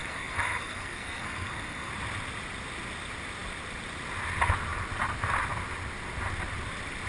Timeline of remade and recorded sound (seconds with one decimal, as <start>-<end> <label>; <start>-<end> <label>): 0.0-1.9 remade; 1.9-7.1 recorded